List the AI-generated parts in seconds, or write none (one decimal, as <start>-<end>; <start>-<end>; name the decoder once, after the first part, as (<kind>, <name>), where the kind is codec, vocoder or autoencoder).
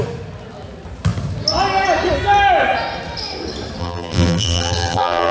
3.8-5.3 (vocoder, BigVGAN v2)